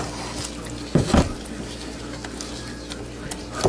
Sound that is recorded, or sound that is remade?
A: recorded